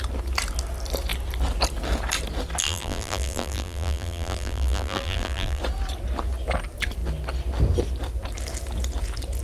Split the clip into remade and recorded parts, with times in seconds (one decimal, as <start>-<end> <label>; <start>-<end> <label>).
0.0-2.6 recorded; 2.6-5.6 remade; 5.6-9.4 recorded